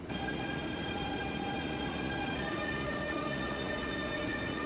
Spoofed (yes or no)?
yes